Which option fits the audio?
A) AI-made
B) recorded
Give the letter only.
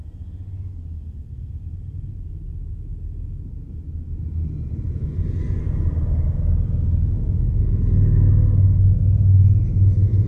B